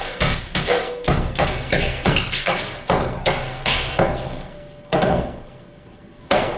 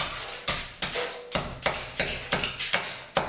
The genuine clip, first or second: second